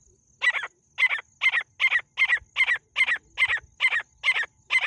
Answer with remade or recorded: recorded